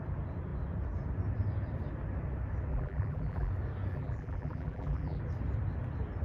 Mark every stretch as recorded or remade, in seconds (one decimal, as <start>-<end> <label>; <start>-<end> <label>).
0.0-2.7 recorded; 2.7-3.5 remade; 3.5-3.9 recorded; 3.9-5.2 remade; 5.2-6.2 recorded